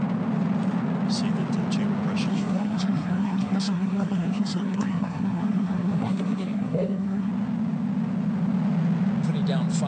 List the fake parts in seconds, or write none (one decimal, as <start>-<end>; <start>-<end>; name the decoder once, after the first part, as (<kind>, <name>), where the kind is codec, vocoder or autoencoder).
2.3-7.3 (codec, SNAC)